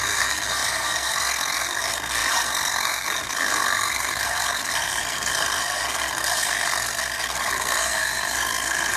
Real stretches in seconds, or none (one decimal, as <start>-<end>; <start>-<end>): none